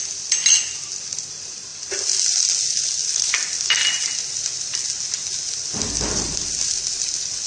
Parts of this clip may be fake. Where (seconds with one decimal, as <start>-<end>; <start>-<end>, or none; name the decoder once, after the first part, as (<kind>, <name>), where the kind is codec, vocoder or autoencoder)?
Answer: none